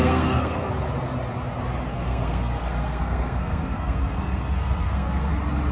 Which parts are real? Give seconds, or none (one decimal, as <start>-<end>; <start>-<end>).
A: 0.7-1.9; 5.3-5.7